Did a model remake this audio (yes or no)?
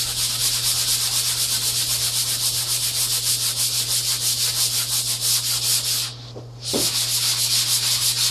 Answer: no